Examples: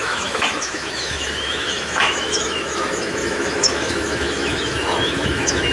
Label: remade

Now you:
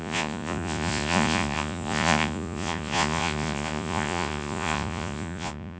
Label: remade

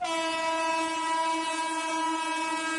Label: recorded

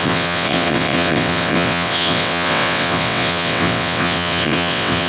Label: remade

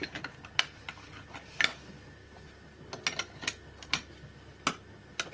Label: recorded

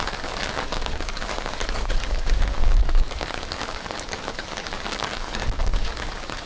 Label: remade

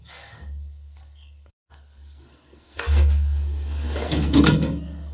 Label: remade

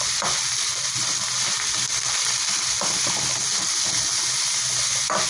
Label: recorded